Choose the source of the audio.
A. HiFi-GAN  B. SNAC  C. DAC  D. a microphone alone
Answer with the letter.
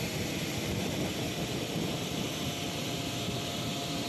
D